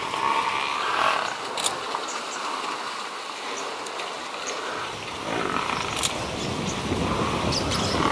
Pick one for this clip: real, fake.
real